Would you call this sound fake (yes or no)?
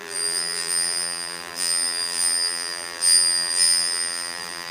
yes